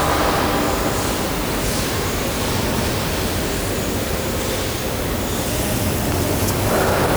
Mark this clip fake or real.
real